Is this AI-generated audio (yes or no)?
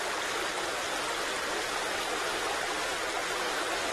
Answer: no